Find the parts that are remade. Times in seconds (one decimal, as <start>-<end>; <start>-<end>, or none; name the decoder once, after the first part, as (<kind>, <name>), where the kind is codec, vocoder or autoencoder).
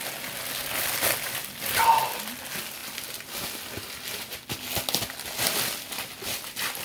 none